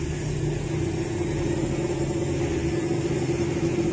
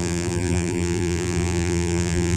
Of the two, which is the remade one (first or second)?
second